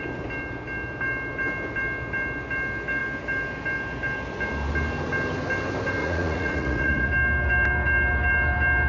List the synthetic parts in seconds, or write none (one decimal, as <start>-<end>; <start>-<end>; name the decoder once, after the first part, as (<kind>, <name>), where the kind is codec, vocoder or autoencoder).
6.0-7.1 (vocoder, Vocos)